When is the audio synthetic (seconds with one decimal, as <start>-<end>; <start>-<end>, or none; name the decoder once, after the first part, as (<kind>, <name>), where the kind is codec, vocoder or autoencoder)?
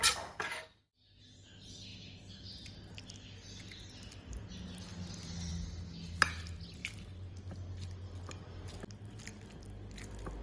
none